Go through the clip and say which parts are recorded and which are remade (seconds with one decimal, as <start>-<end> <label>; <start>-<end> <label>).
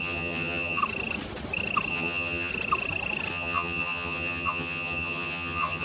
0.0-0.8 remade; 0.8-1.9 recorded; 1.9-2.5 remade; 2.5-3.3 recorded; 3.3-5.8 remade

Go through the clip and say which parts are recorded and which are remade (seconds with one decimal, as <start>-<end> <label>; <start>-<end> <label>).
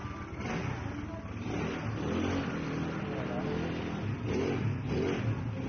0.0-5.7 recorded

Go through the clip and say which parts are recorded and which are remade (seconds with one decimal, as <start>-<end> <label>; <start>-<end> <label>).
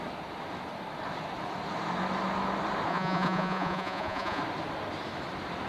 0.0-2.9 recorded; 2.9-4.4 remade; 4.4-5.7 recorded